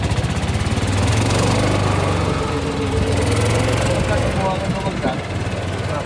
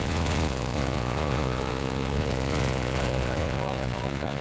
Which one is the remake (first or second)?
second